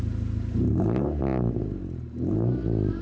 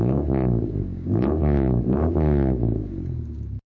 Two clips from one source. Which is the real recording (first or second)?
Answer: first